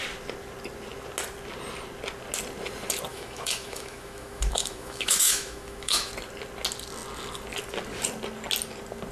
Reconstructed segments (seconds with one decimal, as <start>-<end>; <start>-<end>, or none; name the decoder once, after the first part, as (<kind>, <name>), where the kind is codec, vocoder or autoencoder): 3.1-6.1 (autoencoder, DAC-VAE)